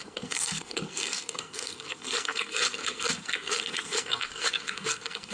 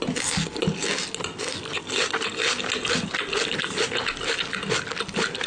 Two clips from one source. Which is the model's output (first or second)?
first